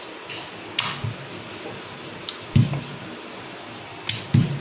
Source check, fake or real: real